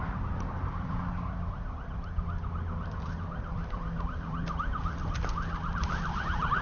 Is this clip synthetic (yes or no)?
yes